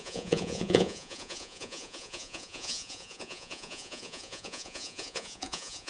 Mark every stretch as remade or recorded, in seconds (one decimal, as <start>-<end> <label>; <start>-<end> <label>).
0.0-5.9 remade